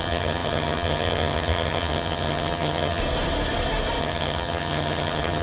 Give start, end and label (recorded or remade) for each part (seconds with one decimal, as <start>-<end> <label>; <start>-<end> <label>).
0.0-3.0 remade; 3.0-4.0 recorded; 4.0-5.4 remade

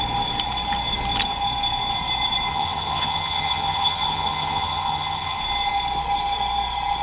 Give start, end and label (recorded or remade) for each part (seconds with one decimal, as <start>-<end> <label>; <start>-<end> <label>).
0.0-2.5 recorded; 2.5-5.4 remade; 5.4-7.0 recorded